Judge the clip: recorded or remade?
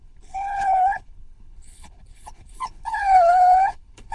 remade